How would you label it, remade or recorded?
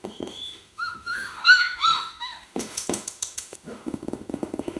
remade